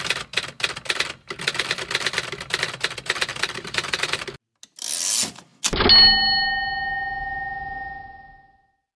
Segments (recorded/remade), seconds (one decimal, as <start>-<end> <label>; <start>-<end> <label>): 0.0-3.3 recorded; 3.3-4.2 remade; 4.2-9.0 recorded